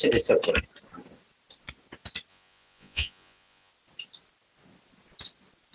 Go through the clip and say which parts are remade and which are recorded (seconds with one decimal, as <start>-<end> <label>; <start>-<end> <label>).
0.0-2.3 recorded; 2.3-3.7 remade; 3.7-5.7 recorded